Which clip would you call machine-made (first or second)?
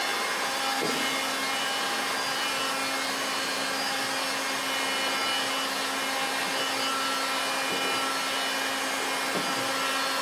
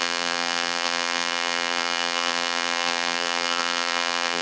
second